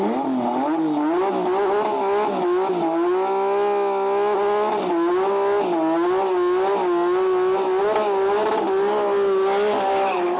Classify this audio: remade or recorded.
recorded